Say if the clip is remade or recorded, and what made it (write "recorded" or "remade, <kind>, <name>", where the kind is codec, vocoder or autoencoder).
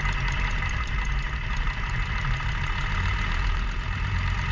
remade, vocoder, BigVGAN v2